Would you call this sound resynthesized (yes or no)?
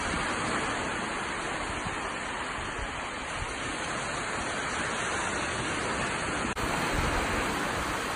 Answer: no